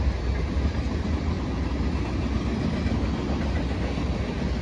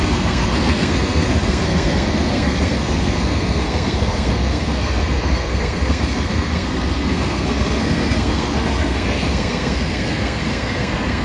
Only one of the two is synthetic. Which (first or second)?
second